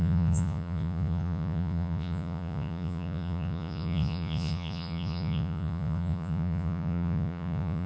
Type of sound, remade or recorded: remade